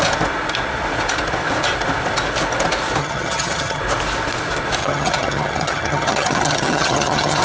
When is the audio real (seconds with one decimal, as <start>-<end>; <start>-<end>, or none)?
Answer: 0.0-3.0; 3.8-4.8